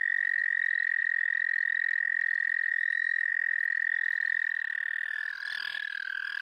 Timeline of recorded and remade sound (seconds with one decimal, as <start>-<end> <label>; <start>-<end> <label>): 0.0-2.7 recorded; 2.7-3.3 remade; 3.3-6.4 recorded